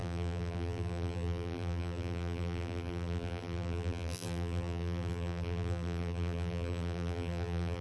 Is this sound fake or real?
fake